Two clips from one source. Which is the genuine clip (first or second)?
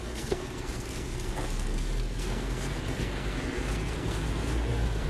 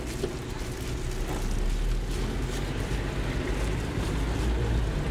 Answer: second